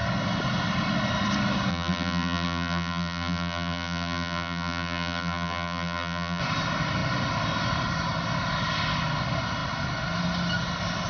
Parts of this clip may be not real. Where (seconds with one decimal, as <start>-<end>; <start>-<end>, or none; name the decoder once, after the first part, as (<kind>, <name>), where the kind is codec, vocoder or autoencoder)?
1.7-6.4 (vocoder, BigVGAN v2)